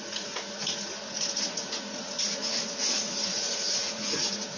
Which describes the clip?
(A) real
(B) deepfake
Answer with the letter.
B